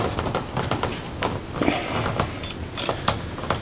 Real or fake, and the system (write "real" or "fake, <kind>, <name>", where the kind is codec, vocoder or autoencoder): real